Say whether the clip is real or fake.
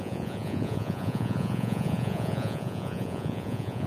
fake